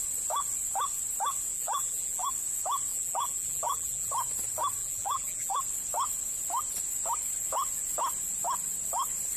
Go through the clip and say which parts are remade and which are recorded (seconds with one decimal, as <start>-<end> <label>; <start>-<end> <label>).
0.0-1.5 recorded; 1.5-2.3 remade; 2.3-2.9 recorded; 2.9-4.1 remade; 4.1-4.8 recorded; 4.8-5.6 remade; 5.6-9.4 recorded